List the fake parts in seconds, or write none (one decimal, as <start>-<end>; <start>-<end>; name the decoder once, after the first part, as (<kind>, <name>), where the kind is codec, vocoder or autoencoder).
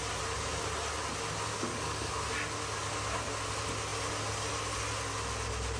1.5-2.1 (codec, DAC)